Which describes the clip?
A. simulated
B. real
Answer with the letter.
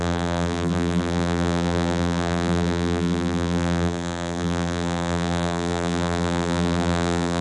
A